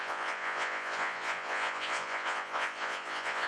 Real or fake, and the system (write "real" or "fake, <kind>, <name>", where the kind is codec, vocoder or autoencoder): fake, vocoder, Vocos